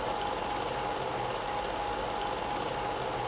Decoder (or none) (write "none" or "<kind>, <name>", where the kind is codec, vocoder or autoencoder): none